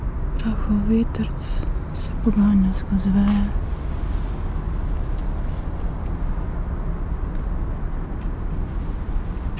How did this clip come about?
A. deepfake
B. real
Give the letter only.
B